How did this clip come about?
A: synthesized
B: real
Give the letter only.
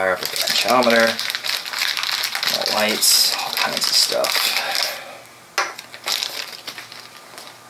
B